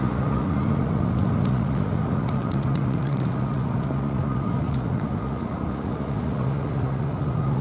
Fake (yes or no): yes